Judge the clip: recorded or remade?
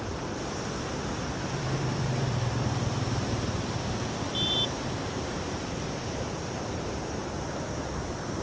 remade